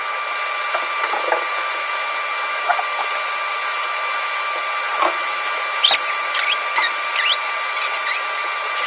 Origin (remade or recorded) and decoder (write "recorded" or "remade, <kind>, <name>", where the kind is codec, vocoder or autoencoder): recorded